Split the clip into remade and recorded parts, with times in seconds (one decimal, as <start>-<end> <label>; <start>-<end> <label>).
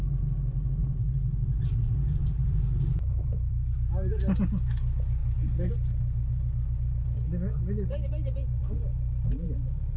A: 0.0-0.8 recorded; 0.8-2.8 remade; 2.8-10.0 recorded